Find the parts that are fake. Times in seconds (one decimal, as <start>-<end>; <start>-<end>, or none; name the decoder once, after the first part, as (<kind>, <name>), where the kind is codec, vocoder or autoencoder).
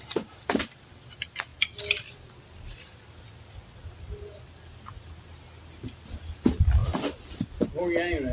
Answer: none